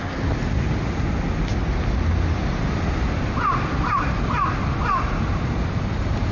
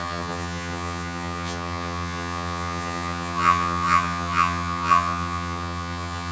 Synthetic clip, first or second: second